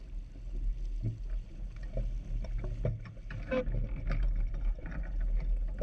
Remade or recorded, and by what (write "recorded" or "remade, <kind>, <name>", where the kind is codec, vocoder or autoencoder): recorded